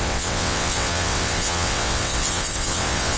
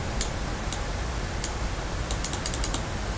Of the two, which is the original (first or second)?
second